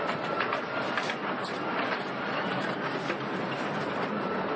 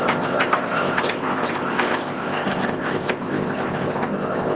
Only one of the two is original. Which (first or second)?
first